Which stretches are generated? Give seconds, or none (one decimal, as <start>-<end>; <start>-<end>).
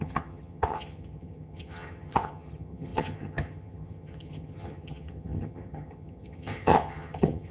0.0-7.5